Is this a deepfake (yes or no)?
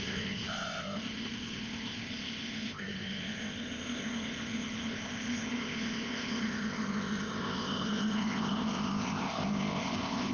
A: yes